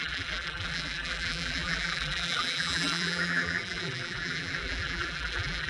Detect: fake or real fake